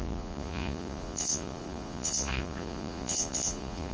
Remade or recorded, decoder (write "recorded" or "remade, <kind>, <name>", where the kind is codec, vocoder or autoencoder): remade, vocoder, Vocos